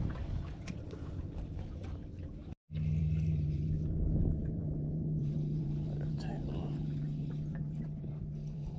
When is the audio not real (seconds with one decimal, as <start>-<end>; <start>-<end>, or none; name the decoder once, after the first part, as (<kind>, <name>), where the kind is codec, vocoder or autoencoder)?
0.0-2.4 (vocoder, BigVGAN v2); 3.0-8.8